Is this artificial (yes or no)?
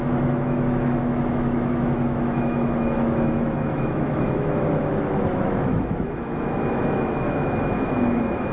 yes